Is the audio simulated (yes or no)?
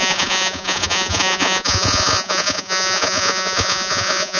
yes